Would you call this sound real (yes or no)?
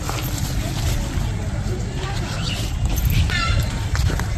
yes